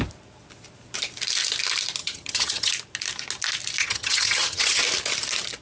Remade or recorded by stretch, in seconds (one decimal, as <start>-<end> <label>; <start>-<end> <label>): 0.0-2.0 recorded; 2.0-2.7 remade; 2.7-3.8 recorded; 3.8-4.8 remade; 4.8-5.6 recorded